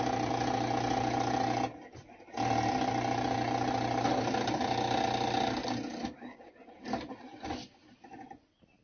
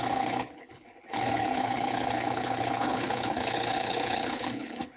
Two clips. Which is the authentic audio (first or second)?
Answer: first